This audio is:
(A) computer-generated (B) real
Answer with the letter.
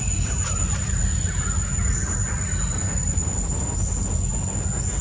B